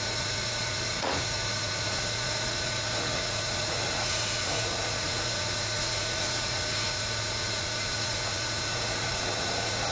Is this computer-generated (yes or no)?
yes